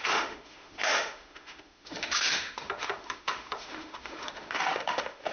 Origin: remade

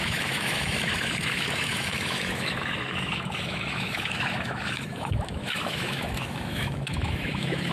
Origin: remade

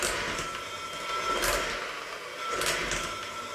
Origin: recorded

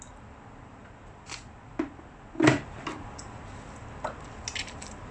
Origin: recorded